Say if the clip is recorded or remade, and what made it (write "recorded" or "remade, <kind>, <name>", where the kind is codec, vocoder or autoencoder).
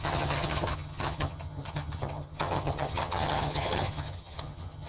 remade, vocoder, HiFi-GAN